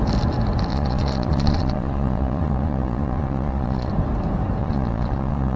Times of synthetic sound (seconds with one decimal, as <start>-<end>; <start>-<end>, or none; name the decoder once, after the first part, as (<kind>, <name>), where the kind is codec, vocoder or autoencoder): 0.7-3.9 (vocoder, Vocos); 4.6-5.6